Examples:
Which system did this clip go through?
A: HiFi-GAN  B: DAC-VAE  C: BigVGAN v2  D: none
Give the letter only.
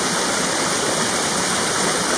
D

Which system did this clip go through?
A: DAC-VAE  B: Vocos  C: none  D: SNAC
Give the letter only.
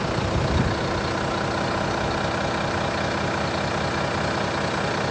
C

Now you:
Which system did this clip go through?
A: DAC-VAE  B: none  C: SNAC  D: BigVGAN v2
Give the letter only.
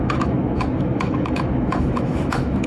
A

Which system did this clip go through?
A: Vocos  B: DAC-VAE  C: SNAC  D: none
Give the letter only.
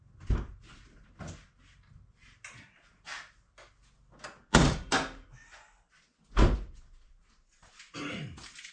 D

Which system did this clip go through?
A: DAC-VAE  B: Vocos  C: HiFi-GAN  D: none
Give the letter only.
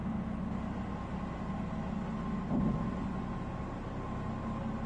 D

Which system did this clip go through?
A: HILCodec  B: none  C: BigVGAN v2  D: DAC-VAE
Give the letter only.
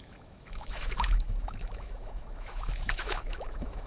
D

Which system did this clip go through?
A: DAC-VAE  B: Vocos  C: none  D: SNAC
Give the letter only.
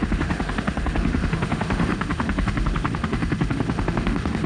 A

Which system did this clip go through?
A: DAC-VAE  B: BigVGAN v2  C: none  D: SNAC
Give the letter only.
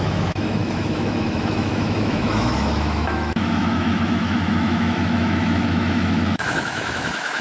A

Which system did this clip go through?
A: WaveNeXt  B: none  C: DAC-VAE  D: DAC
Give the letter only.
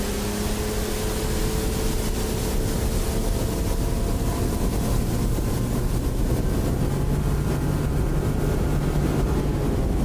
B